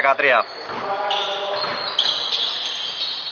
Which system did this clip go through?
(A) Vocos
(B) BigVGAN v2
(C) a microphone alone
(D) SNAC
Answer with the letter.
C